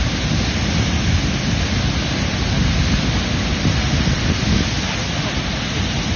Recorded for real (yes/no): yes